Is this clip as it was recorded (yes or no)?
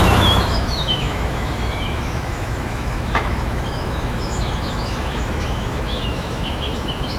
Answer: no